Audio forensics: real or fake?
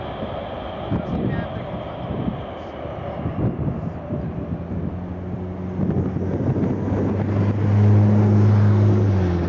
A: real